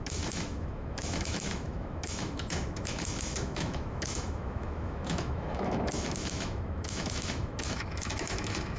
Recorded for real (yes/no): no